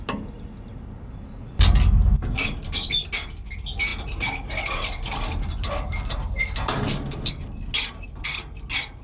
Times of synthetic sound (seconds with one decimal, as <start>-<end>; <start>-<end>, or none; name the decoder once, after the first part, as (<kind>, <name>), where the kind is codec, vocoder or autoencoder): none